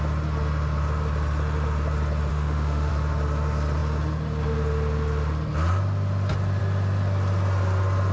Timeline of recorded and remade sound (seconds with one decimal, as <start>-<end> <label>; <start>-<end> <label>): 0.0-2.3 recorded; 2.3-2.9 remade; 2.9-8.1 recorded